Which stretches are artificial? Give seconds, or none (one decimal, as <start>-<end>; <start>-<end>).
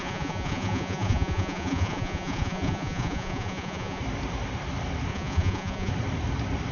0.0-4.0; 5.1-5.9